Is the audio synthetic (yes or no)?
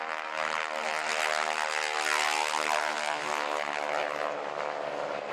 no